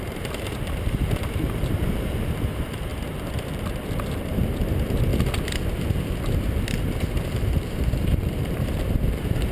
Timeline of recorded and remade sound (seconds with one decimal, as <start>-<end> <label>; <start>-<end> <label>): 0.0-2.9 remade; 2.9-3.5 recorded; 3.5-5.1 remade; 5.1-7.0 recorded; 7.0-9.5 remade